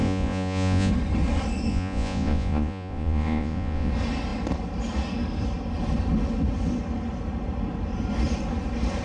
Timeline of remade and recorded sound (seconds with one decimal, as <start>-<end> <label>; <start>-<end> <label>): 0.0-0.9 remade; 0.9-1.7 recorded; 1.7-3.9 remade; 3.9-9.0 recorded